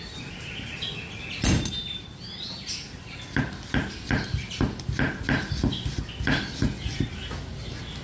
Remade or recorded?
recorded